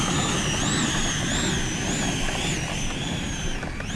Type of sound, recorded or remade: recorded